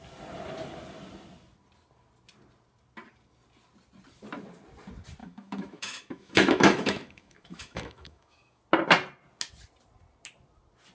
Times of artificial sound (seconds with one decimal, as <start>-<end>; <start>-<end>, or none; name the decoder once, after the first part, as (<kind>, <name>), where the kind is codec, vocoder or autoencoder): 5.2-8.6 (autoencoder, DAC-VAE)